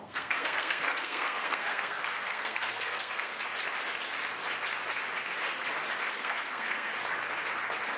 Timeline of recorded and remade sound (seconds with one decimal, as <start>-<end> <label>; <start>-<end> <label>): 0.0-3.3 remade; 3.3-6.1 recorded; 6.1-6.9 remade; 6.9-8.0 recorded